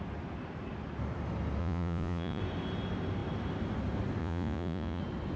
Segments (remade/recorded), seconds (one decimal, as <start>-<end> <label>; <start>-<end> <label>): 0.0-1.6 recorded; 1.6-2.4 remade; 2.4-4.2 recorded; 4.2-5.0 remade; 5.0-5.4 recorded